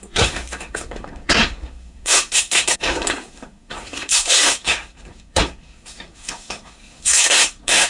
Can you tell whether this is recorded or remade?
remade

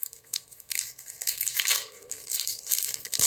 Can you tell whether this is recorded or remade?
remade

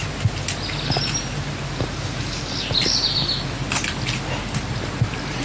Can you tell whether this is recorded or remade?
recorded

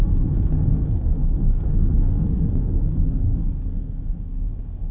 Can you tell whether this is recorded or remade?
remade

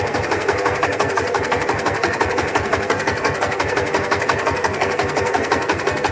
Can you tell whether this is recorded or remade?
remade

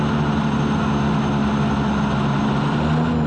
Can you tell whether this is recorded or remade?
recorded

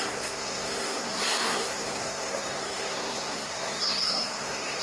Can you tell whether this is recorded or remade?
remade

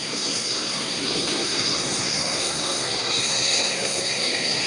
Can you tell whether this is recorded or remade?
remade